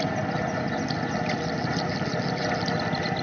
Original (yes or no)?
yes